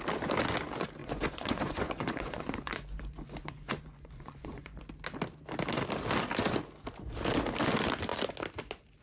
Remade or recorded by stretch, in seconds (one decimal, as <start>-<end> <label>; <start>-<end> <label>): 0.0-1.0 recorded; 1.0-4.8 remade; 4.8-9.0 recorded